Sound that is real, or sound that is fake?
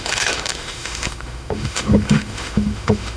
fake